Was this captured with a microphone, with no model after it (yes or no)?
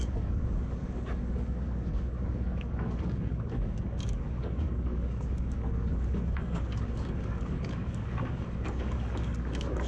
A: no